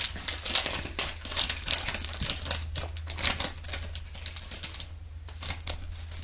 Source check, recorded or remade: recorded